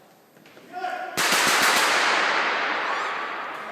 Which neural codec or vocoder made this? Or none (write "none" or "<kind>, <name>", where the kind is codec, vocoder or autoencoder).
none